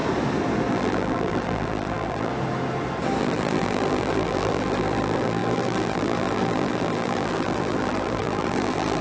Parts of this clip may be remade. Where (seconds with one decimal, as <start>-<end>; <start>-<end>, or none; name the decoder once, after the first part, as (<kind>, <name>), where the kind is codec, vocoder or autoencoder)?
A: 0.7-2.3 (vocoder, BigVGAN v2); 3.2-9.0